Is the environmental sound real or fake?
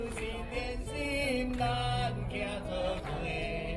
real